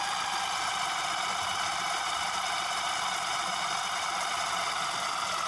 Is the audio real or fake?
real